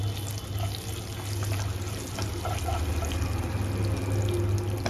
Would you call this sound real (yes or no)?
yes